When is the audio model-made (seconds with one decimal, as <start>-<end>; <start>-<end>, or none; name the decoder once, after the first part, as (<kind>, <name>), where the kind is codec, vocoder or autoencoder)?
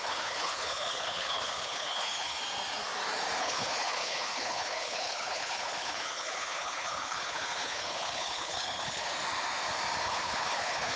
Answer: 0.0-2.4 (codec, HILCodec); 3.4-9.1; 10.0-11.0